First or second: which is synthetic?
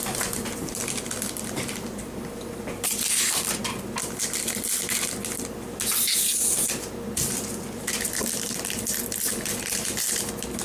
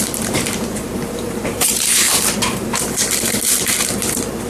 second